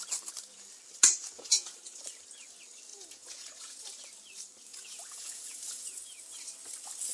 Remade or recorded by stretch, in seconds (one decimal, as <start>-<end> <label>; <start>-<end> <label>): 0.0-1.2 recorded; 1.2-2.0 remade; 2.0-2.9 recorded; 2.9-3.8 remade; 3.8-4.7 recorded; 4.7-6.2 remade; 6.2-7.1 recorded